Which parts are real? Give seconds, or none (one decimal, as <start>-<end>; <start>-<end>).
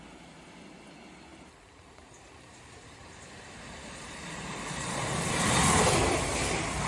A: 0.0-1.3; 5.4-6.9